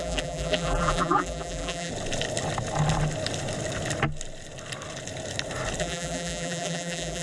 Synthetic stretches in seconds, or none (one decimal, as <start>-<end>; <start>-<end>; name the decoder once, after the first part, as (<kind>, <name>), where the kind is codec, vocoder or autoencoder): 0.0-1.9 (vocoder, BigVGAN v2); 5.8-7.2